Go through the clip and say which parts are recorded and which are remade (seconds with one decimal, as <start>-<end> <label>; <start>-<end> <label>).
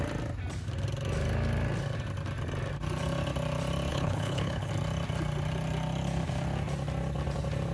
0.0-3.9 recorded; 3.9-4.7 remade; 4.7-7.7 recorded